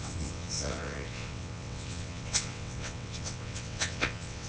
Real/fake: fake